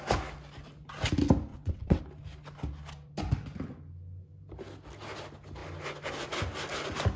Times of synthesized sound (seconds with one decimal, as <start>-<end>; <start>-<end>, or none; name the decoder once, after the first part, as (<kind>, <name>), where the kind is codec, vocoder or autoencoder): 1.5-2.0 (vocoder, WaveNeXt)

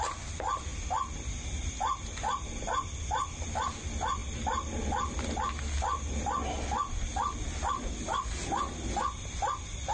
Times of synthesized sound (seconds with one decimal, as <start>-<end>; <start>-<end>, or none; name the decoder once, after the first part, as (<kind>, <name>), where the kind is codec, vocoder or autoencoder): none

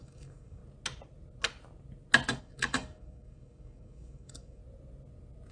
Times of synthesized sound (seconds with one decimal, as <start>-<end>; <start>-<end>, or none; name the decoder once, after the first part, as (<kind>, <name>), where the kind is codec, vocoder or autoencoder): 0.0-0.6 (codec, DAC); 2.4-4.6

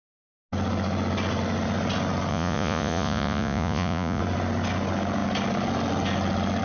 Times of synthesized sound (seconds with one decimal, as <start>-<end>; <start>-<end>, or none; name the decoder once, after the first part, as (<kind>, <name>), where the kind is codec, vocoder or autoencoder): 2.3-4.2 (vocoder, Vocos)

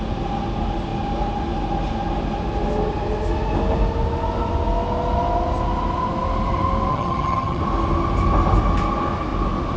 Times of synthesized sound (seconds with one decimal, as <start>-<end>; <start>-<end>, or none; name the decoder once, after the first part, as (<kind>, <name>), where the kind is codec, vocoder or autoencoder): 6.9-7.6 (vocoder, HiFi-GAN)

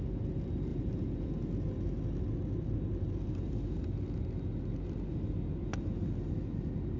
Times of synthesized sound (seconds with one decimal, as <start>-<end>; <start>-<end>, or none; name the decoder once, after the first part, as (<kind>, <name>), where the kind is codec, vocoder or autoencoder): none

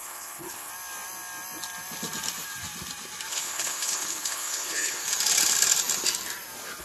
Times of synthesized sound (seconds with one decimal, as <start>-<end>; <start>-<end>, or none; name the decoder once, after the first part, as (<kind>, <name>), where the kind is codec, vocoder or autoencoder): 0.0-0.7 (codec, HILCodec); 3.3-5.0